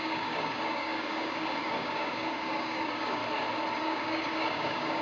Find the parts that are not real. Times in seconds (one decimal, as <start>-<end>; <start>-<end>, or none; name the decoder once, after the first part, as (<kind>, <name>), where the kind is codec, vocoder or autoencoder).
0.0-3.2 (codec, DAC); 3.8-5.0

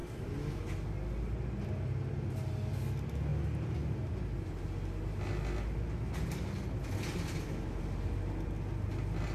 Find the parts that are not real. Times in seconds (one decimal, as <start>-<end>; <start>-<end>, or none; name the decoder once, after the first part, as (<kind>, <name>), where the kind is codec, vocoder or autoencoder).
none